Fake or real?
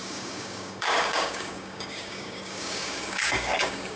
fake